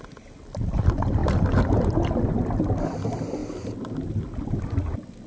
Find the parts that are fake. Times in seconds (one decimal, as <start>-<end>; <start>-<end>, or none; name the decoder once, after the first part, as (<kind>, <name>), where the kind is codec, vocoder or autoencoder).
none